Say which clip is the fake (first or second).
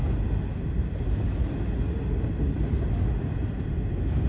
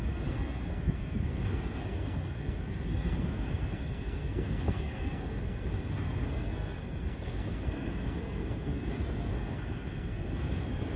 second